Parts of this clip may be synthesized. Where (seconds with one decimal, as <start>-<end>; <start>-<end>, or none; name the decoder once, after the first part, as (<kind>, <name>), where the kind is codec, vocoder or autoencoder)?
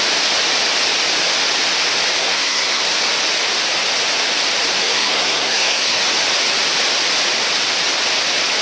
2.2-2.8 (codec, SNAC); 4.8-6.0